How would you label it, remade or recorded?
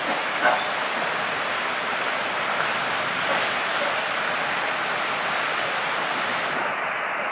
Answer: recorded